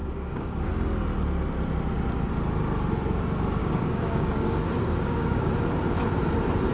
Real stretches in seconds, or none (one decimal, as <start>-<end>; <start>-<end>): 0.7-3.6; 5.5-6.7